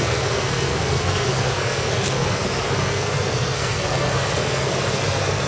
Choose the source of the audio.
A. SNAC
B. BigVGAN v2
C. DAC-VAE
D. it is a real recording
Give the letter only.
A